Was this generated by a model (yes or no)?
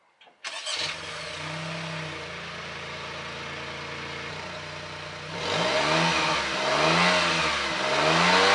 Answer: no